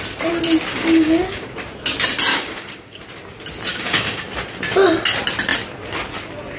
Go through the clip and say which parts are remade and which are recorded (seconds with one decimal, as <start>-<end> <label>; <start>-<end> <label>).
0.0-0.7 recorded; 0.7-1.5 remade; 1.5-2.3 recorded; 2.3-3.0 remade; 3.0-3.7 recorded; 3.7-4.2 remade; 4.2-6.6 recorded